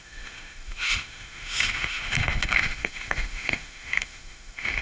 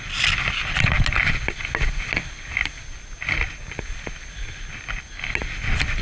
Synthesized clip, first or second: first